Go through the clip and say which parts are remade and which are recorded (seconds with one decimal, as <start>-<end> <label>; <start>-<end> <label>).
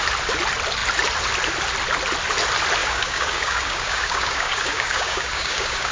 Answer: 0.0-2.8 recorded; 2.8-5.9 remade